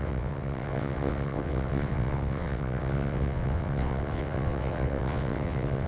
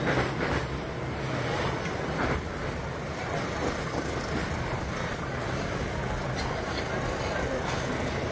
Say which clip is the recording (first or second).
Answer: second